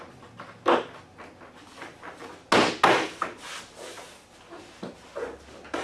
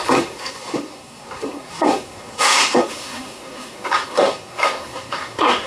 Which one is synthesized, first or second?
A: second